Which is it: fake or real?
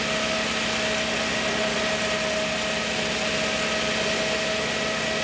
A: real